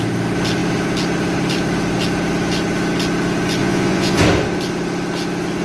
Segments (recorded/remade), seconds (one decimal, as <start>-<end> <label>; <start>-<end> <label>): 0.0-3.6 recorded; 3.6-4.2 remade; 4.2-5.6 recorded